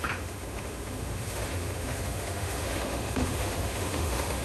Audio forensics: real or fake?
fake